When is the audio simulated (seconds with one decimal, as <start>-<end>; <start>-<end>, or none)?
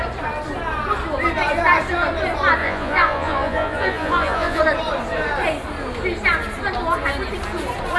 2.6-4.6